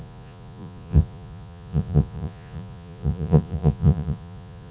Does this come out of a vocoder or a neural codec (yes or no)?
yes